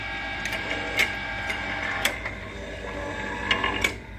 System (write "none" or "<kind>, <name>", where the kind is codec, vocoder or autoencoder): none